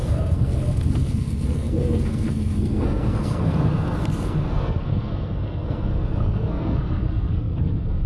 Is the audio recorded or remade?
remade